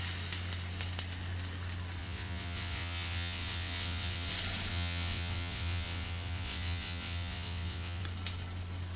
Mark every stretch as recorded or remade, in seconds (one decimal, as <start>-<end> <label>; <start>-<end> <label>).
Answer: 0.0-2.0 recorded; 2.0-4.3 remade; 4.3-4.7 recorded; 4.7-8.0 remade; 8.0-9.0 recorded